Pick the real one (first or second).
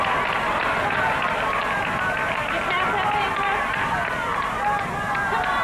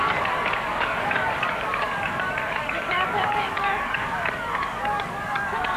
first